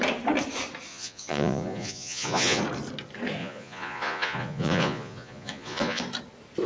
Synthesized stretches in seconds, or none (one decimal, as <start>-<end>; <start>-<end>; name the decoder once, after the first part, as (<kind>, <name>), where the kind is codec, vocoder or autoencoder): 0.9-2.6 (vocoder, Vocos); 3.4-6.0

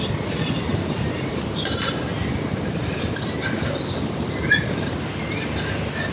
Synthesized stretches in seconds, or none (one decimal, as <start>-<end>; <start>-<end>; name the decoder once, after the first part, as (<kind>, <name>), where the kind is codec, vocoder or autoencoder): none